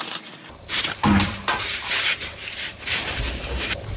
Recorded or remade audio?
remade